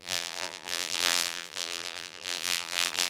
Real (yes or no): no